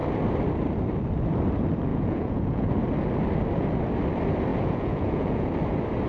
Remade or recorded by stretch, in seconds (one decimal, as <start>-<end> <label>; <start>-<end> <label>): 0.0-1.9 recorded; 1.9-2.7 remade; 2.7-4.5 recorded; 4.5-5.5 remade; 5.5-6.1 recorded